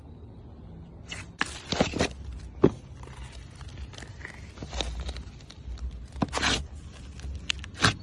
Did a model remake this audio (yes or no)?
no